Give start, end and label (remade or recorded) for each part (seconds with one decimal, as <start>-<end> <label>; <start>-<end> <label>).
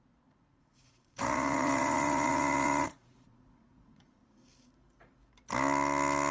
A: 0.0-4.2 remade; 4.2-6.3 recorded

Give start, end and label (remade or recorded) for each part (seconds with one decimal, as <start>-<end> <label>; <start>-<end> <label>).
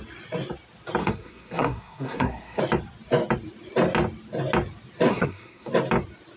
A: 0.0-1.0 recorded; 1.0-2.6 remade; 2.6-5.1 recorded; 5.1-5.7 remade; 5.7-6.4 recorded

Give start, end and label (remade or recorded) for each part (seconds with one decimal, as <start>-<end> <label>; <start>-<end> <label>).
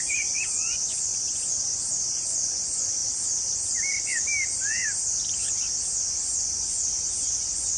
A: 0.0-3.0 remade; 3.0-6.0 recorded; 6.0-7.8 remade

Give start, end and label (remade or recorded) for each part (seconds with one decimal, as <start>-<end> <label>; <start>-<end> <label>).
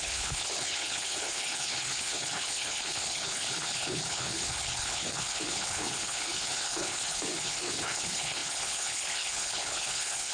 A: 0.0-10.3 remade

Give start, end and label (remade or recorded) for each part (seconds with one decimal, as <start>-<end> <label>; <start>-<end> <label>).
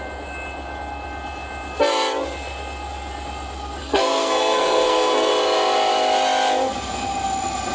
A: 0.0-3.8 recorded; 3.8-5.3 remade; 5.3-7.7 recorded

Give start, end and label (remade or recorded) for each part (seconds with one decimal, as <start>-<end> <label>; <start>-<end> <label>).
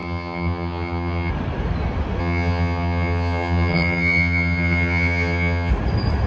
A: 0.0-1.3 remade; 1.3-2.2 recorded; 2.2-5.7 remade; 5.7-6.3 recorded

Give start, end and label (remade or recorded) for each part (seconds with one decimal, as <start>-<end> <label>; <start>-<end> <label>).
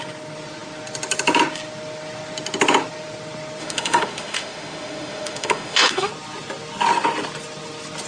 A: 0.0-3.6 recorded; 3.6-6.1 remade; 6.1-8.1 recorded